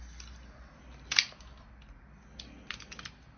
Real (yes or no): yes